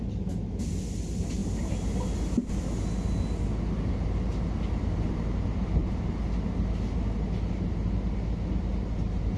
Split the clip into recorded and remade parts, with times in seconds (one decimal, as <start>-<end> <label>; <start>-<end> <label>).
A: 0.0-9.4 recorded